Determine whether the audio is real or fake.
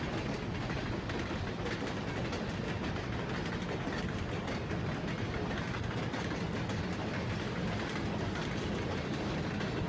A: real